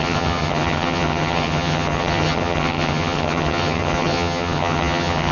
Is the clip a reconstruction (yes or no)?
yes